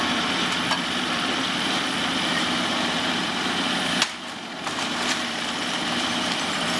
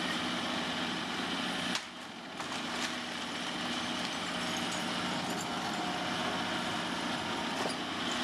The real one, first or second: second